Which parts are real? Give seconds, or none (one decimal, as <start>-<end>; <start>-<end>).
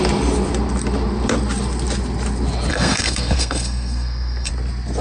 0.0-2.7; 4.5-5.0